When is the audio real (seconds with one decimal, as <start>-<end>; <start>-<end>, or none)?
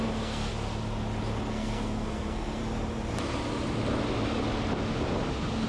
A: 0.5-1.5; 2.6-5.7